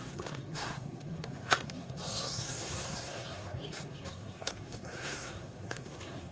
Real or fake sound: fake